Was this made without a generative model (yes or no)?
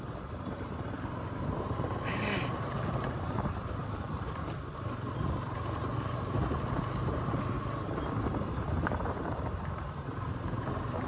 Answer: no